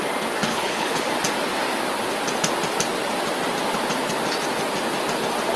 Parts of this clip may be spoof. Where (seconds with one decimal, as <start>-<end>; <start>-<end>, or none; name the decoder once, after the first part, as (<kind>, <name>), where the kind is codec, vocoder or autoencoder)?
0.5-1.1 (codec, HILCodec)